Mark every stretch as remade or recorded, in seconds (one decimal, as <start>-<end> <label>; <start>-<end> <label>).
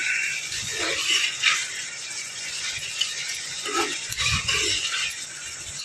0.0-5.8 remade